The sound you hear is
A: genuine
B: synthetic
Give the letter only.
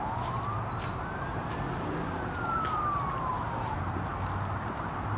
A